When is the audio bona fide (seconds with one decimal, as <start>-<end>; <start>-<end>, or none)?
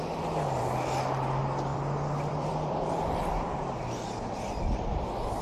0.0-1.7; 4.5-5.4